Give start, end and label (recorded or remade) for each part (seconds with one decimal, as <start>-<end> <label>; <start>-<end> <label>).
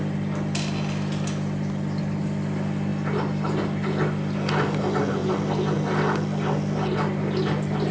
0.0-7.9 recorded